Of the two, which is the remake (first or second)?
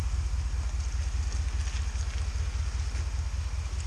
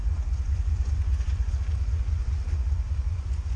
second